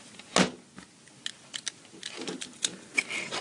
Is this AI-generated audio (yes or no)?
no